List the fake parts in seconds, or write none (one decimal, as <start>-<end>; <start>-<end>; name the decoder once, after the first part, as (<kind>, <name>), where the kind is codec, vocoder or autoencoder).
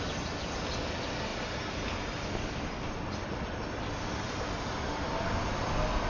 none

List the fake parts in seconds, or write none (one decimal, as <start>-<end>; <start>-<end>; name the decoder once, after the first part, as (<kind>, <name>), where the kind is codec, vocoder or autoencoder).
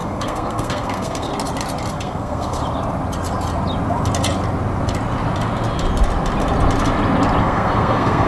0.0-1.3 (codec, SNAC); 1.9-2.6; 7.4-8.3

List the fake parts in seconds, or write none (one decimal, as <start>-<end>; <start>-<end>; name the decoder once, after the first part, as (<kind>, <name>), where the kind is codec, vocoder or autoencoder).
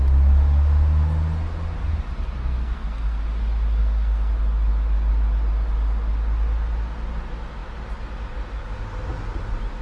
2.4-3.2 (codec, SNAC); 3.8-4.3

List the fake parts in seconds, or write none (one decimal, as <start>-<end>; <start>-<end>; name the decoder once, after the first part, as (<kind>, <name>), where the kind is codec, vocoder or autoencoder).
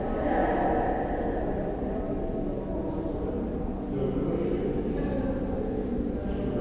none